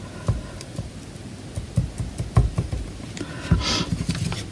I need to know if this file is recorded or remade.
recorded